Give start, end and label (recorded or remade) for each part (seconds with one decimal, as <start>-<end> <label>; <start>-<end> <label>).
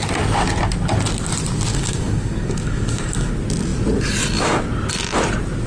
0.0-1.7 recorded; 1.7-3.3 remade; 3.3-5.7 recorded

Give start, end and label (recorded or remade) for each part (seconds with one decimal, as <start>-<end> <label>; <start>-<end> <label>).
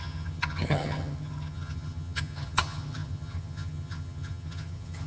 0.0-5.1 remade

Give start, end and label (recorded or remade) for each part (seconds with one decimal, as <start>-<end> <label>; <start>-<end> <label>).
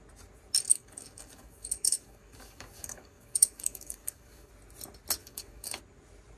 0.0-0.7 recorded; 0.7-4.5 remade; 4.5-5.2 recorded; 5.2-5.8 remade; 5.8-6.4 recorded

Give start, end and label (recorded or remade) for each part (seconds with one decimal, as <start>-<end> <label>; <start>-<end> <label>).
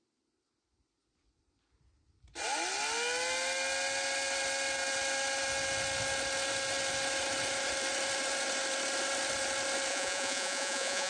0.0-9.9 recorded; 9.9-11.1 remade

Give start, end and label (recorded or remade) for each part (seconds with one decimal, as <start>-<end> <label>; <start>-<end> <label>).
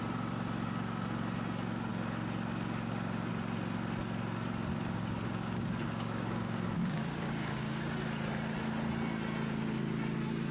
0.0-5.3 recorded; 5.3-7.8 remade; 7.8-10.5 recorded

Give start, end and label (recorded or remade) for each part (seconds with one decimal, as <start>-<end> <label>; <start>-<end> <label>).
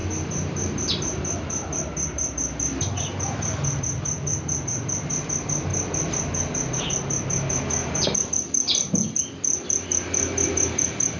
0.0-1.7 remade; 1.7-7.8 recorded; 7.8-9.2 remade; 9.2-11.2 recorded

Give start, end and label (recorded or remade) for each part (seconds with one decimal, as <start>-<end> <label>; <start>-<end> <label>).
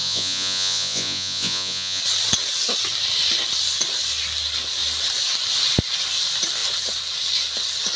0.0-2.0 remade; 2.0-8.0 recorded